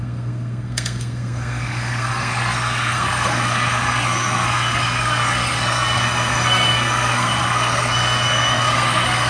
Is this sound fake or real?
fake